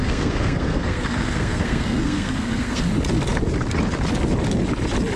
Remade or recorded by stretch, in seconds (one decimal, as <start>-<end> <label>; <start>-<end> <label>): 0.0-2.8 remade; 2.8-5.2 recorded